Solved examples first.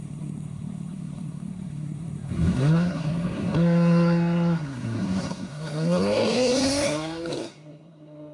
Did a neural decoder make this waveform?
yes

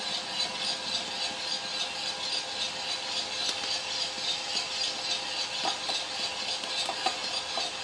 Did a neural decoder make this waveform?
no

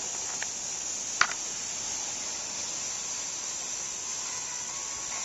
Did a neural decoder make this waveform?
no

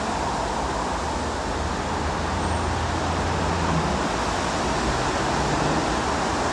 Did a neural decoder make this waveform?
no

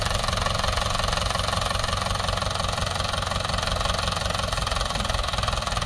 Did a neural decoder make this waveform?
no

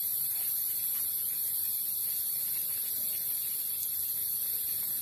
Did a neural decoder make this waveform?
no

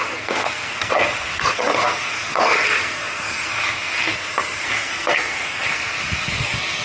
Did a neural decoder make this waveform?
yes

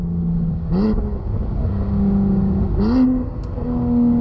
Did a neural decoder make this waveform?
no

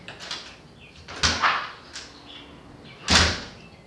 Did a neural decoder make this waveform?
no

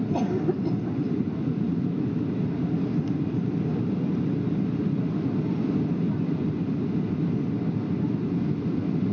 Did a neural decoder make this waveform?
no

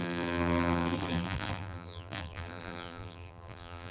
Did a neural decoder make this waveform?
yes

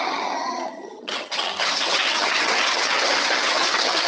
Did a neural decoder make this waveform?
yes